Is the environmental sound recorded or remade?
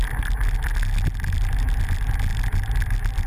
recorded